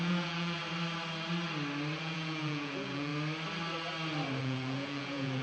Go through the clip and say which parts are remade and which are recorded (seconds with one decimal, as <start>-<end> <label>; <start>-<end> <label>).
0.0-0.6 remade; 0.6-2.0 recorded; 2.0-3.1 remade; 3.1-4.4 recorded; 4.4-5.4 remade